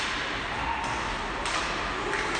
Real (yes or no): yes